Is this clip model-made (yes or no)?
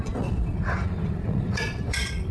yes